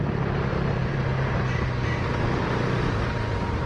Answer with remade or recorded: recorded